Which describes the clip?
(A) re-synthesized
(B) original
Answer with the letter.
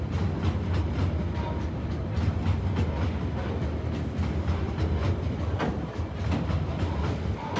B